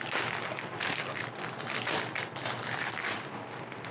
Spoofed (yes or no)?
no